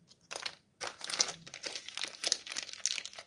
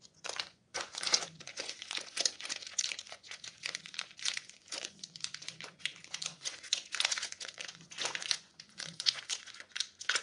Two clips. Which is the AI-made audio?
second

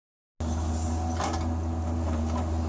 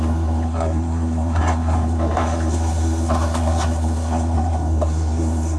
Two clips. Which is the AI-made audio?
second